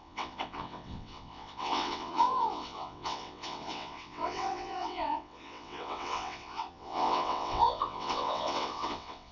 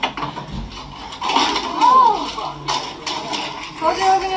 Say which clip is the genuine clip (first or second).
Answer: second